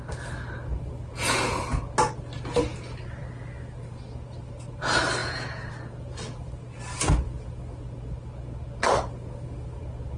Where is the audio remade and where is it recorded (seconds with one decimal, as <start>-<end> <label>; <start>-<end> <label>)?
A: 0.0-1.1 recorded; 1.1-1.6 remade; 1.6-5.2 recorded; 5.2-5.7 remade; 5.7-10.2 recorded